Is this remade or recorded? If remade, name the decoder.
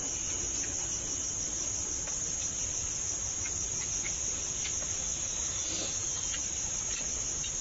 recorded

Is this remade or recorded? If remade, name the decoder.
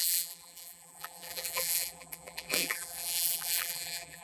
remade, vocoder, BigVGAN v2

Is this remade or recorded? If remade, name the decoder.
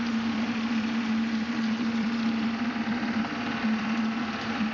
remade, vocoder, BigVGAN v2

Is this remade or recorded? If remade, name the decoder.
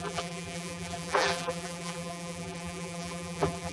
remade, vocoder, BigVGAN v2